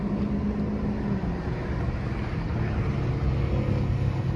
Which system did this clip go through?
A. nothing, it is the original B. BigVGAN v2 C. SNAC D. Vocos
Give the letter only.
A